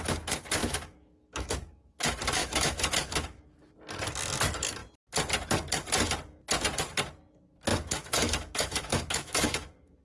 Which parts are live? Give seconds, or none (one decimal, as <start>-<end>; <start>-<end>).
0.0-0.6; 2.0-2.4; 3.8-7.7